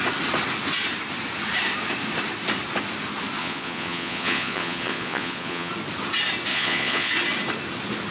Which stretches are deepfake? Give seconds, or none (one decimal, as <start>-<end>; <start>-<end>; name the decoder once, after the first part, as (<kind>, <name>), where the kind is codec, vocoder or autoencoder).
3.4-5.7 (vocoder, Vocos); 6.5-7.1